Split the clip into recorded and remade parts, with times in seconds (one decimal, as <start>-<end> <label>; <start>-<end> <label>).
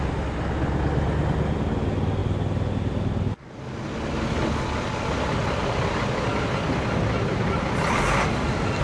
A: 0.0-8.8 recorded